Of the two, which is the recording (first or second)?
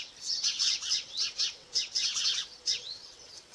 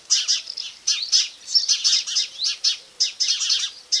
second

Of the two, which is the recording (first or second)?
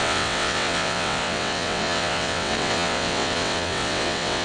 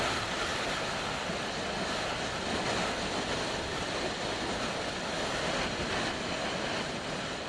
second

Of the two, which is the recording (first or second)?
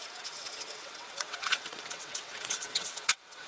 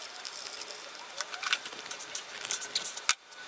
second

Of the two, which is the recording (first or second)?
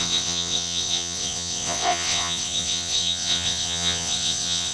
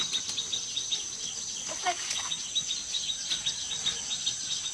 second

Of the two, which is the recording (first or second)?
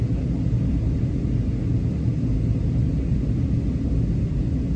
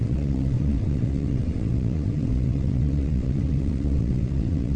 first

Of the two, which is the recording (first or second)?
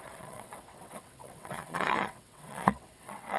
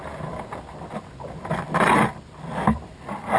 second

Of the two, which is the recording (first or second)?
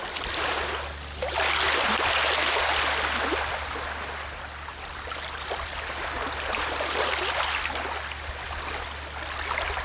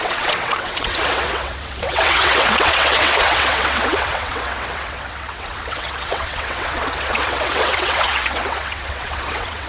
first